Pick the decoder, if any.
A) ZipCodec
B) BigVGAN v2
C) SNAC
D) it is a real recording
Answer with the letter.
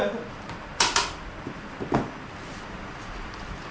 D